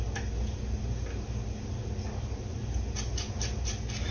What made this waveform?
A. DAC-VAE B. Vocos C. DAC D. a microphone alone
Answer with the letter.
D